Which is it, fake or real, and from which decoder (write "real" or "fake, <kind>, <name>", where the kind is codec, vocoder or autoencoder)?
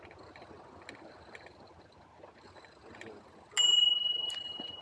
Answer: real